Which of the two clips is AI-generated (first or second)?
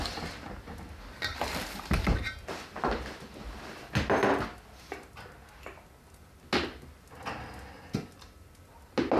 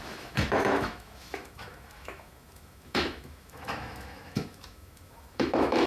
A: second